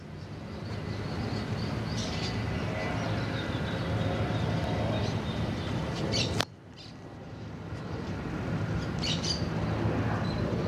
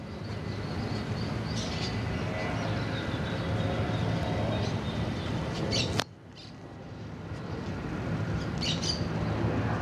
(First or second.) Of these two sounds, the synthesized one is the first